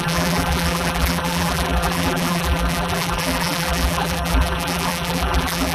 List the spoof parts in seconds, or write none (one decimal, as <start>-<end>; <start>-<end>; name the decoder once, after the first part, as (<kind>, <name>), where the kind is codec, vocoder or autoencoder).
0.0-5.7 (vocoder, BigVGAN v2)